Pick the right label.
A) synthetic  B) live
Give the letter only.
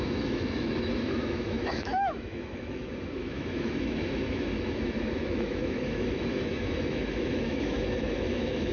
A